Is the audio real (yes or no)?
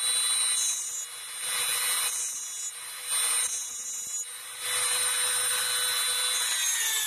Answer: yes